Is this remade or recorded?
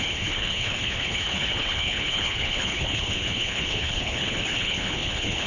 remade